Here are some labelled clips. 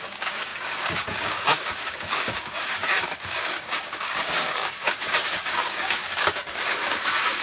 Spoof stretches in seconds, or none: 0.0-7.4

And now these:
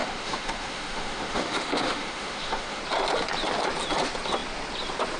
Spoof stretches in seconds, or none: 0.0-2.8

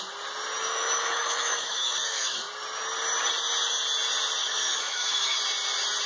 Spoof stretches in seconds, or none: 0.7-2.5; 4.4-5.4

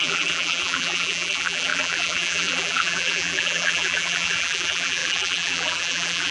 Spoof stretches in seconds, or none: 0.0-6.3

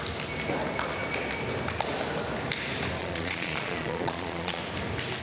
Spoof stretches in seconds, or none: 3.0-4.6

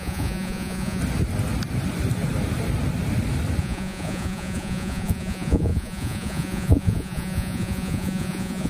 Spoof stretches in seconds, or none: 0.0-1.0; 3.6-8.7

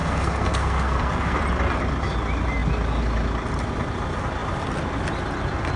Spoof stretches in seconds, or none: 0.0-1.4

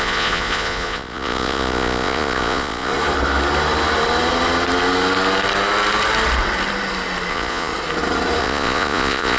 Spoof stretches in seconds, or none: 0.0-2.9; 7.3-7.7; 8.4-9.4